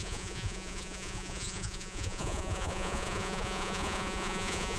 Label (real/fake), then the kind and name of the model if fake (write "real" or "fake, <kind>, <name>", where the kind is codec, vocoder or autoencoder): fake, vocoder, Vocos